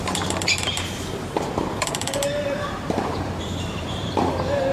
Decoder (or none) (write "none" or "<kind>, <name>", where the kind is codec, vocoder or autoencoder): vocoder, BigVGAN v2